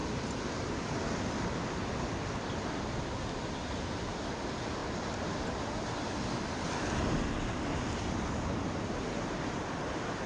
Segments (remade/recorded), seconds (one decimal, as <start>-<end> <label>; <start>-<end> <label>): 0.0-10.3 recorded